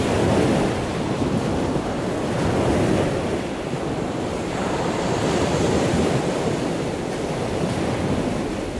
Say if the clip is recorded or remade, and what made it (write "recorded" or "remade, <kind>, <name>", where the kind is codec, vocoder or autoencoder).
recorded